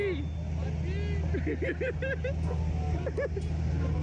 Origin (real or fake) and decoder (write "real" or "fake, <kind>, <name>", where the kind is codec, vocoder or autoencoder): real